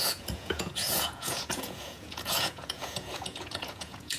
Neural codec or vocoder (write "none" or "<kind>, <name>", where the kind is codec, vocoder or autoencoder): vocoder, Vocos